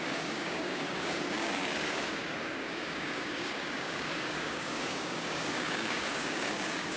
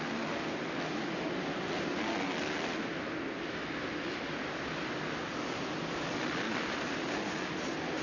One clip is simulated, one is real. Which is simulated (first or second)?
first